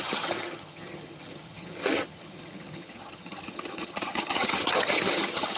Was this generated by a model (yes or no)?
yes